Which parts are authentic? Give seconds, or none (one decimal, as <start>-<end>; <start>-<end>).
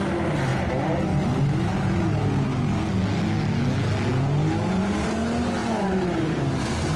0.0-5.6; 6.6-7.0